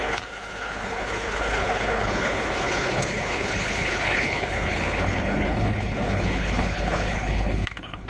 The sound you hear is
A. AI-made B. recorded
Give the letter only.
A